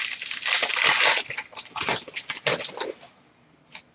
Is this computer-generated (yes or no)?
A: no